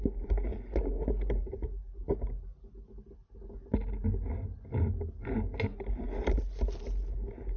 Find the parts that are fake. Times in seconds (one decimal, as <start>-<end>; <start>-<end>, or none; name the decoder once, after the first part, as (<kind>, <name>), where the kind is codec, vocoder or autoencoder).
none